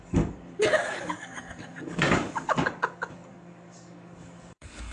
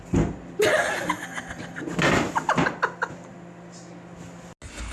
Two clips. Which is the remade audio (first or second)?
first